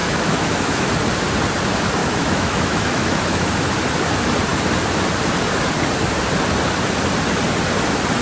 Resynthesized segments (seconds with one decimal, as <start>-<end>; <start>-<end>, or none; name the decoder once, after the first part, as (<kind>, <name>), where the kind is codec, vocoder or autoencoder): 0.0-0.9 (autoencoder, DAC-VAE); 2.0-3.5